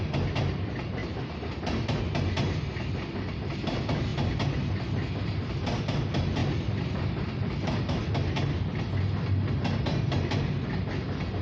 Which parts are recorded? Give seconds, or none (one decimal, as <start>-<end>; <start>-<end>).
0.0-1.0; 1.6-11.4